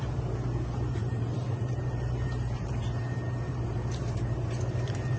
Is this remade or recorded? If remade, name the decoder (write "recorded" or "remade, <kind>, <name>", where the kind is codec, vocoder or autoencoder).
remade, vocoder, BigVGAN v2